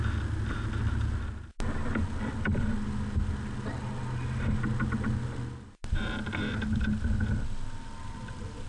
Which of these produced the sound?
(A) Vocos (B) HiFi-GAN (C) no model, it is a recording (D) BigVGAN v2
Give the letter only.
C